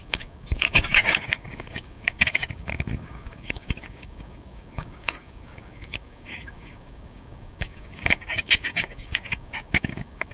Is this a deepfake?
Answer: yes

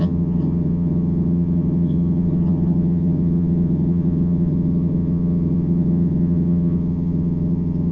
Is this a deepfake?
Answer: yes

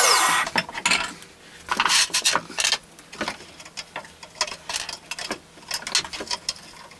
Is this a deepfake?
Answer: no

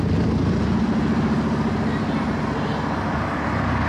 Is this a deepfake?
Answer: no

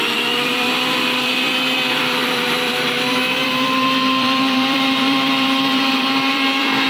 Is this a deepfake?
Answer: yes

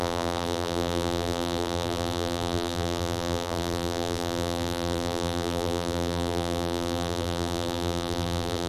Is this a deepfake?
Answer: yes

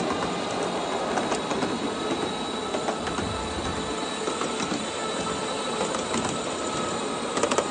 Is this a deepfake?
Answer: no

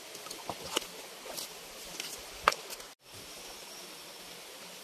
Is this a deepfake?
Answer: no